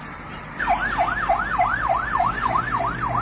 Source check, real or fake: real